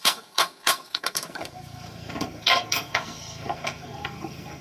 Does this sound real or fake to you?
fake